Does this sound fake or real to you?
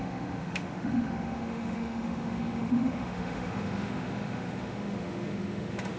fake